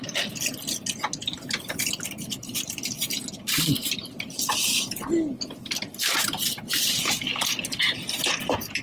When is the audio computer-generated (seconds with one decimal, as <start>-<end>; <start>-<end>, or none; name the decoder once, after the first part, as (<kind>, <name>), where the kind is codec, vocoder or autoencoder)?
1.2-1.9 (vocoder, BigVGAN v2)